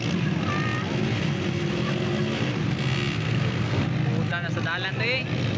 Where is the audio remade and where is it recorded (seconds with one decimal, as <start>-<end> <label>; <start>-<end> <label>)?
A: 0.0-3.3 recorded; 3.3-3.8 remade; 3.8-5.6 recorded